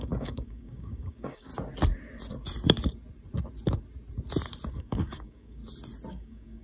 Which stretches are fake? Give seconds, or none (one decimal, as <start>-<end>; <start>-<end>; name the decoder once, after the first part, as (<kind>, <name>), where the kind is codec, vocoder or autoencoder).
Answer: 0.0-1.5 (codec, DAC); 4.7-5.6; 6.1-6.6